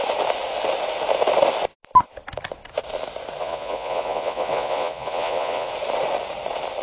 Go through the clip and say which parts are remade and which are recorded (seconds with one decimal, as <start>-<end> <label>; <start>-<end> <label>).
0.0-3.4 recorded; 3.4-5.7 remade; 5.7-6.8 recorded